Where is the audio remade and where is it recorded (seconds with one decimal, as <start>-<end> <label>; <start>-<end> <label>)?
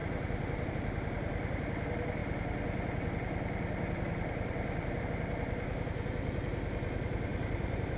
0.0-8.0 recorded